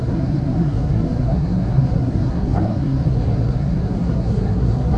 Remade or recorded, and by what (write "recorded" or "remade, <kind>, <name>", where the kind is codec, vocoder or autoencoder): remade, codec, SNAC